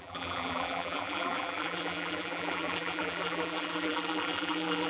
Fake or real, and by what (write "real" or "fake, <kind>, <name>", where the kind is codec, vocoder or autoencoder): fake, vocoder, BigVGAN v2